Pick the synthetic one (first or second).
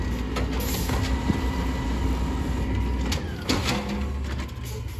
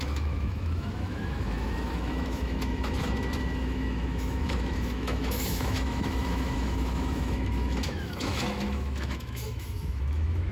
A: second